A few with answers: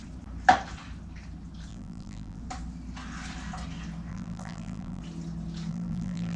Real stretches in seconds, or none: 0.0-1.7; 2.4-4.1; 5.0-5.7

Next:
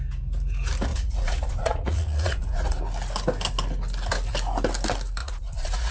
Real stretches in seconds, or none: 0.0-0.9; 2.8-5.2

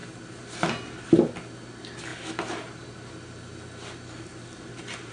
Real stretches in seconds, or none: 0.0-5.1

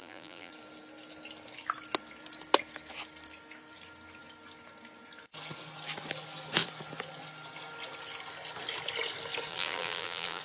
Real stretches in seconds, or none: 0.5-9.5

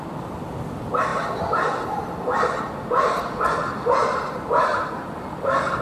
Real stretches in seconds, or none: 0.0-5.8

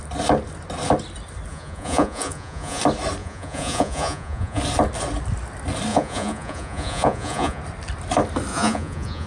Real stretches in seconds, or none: 0.0-1.5; 2.8-3.2; 4.6-5.9; 7.6-8.5